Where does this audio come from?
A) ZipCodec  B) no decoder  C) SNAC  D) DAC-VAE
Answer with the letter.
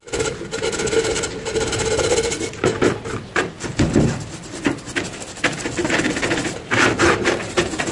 B